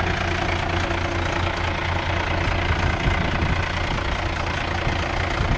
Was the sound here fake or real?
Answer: real